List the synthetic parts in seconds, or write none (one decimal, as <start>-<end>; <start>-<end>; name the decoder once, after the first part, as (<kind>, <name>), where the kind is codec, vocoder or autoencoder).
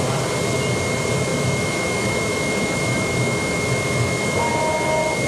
1.3-4.5 (autoencoder, DAC-VAE)